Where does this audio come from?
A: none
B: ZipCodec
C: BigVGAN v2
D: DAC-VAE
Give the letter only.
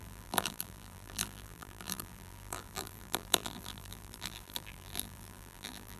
C